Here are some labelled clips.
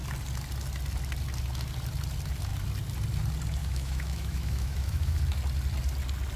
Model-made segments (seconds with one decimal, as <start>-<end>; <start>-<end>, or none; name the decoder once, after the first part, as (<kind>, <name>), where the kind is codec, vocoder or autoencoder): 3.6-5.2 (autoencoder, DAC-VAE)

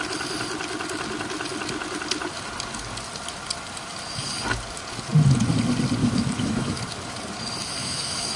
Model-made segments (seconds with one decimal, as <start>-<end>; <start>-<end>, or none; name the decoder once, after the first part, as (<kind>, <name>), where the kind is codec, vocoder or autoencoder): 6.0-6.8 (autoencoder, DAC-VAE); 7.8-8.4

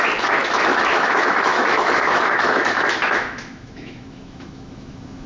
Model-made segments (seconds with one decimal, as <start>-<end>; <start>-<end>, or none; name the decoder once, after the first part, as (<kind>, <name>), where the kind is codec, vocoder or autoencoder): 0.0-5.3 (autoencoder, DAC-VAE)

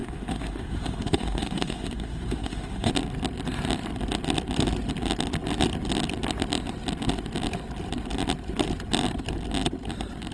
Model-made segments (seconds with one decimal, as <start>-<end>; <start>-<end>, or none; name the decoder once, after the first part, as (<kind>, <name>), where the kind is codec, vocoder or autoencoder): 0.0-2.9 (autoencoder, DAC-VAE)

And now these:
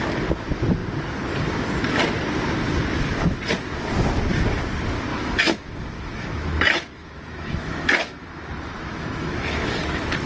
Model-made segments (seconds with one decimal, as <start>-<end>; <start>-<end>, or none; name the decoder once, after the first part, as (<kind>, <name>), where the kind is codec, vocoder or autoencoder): 5.1-10.3 (autoencoder, DAC-VAE)